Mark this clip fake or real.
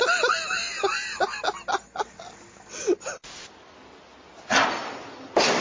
real